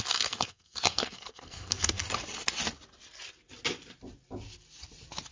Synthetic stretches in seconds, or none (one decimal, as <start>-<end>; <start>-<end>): 0.0-2.0